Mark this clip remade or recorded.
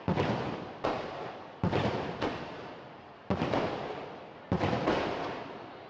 recorded